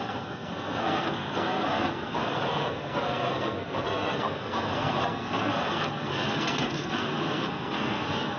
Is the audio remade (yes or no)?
yes